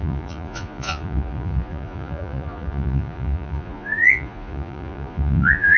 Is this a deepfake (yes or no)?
yes